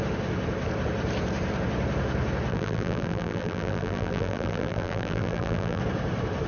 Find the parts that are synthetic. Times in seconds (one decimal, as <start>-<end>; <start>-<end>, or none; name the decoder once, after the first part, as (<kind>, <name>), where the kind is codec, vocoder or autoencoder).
2.5-5.8 (vocoder, BigVGAN v2)